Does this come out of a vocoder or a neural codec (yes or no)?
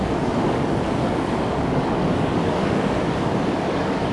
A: yes